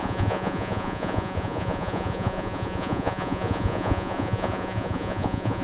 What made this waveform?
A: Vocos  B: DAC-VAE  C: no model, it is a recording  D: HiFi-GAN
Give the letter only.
A